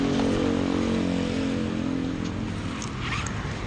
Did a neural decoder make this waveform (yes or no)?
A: no